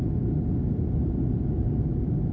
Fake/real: real